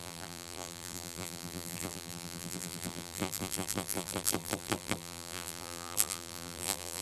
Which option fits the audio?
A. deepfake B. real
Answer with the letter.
A